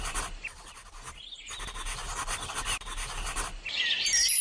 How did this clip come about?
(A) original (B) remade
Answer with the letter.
A